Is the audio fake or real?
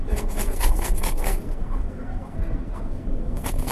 fake